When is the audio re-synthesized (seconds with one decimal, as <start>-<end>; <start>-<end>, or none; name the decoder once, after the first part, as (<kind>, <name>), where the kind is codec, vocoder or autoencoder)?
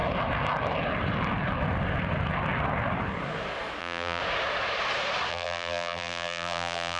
3.8-4.2 (vocoder, BigVGAN v2); 5.3-7.0